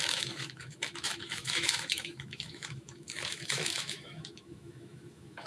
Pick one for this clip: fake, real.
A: fake